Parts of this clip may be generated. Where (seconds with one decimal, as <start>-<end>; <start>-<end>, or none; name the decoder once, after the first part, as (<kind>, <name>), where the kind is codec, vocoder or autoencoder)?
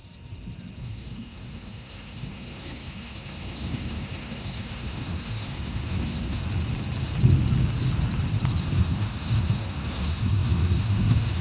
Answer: 0.8-6.4 (codec, SNAC); 8.6-11.4